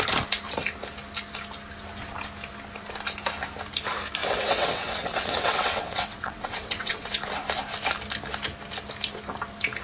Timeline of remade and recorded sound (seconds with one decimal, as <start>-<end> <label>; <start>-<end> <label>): 0.0-4.2 recorded; 4.2-7.1 remade; 7.1-9.8 recorded